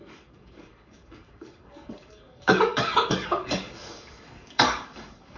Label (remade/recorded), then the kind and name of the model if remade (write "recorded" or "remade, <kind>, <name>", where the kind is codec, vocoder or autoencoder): remade, codec, DAC